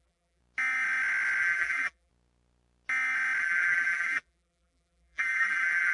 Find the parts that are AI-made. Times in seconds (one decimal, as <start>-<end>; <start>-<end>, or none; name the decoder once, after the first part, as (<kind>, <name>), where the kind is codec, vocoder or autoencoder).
0.0-0.4 (vocoder, BigVGAN v2); 1.4-2.1; 3.4-5.9